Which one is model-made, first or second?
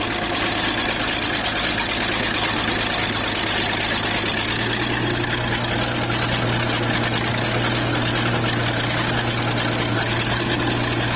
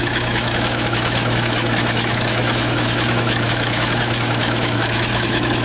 second